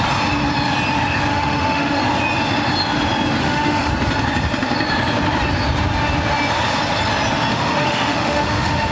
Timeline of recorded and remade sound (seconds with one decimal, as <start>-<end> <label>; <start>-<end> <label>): 0.0-1.3 recorded; 1.3-2.0 remade; 2.0-3.4 recorded; 3.4-3.9 remade; 3.9-7.5 recorded; 7.5-8.9 remade